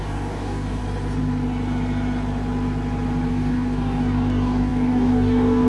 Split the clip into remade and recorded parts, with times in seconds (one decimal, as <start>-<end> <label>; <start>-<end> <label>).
0.0-0.8 remade; 0.8-3.3 recorded; 3.3-5.7 remade